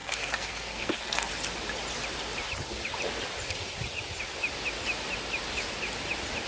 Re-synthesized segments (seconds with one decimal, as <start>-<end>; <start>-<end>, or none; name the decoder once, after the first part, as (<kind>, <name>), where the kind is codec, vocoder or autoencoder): 0.0-1.3 (codec, SNAC)